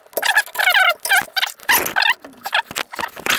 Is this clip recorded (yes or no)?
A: yes